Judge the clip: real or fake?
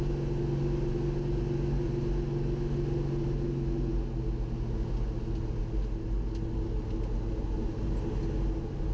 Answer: real